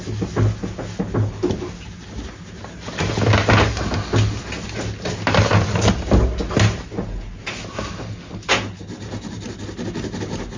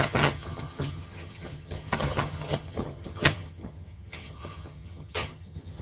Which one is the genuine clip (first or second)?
first